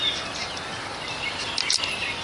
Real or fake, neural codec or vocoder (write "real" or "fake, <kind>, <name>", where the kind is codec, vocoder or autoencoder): real